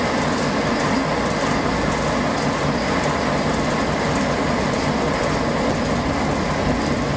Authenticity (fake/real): real